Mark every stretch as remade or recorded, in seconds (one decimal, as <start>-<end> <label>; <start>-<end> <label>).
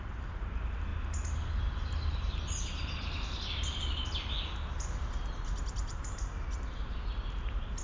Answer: 0.0-7.8 recorded